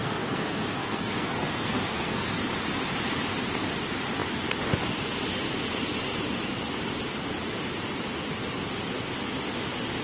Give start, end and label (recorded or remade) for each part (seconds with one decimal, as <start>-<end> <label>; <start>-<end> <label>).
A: 0.0-2.3 remade; 2.3-10.0 recorded